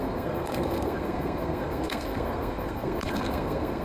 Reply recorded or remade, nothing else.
remade